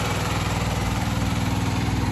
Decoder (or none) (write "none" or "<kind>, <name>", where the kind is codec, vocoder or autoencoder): vocoder, BigVGAN v2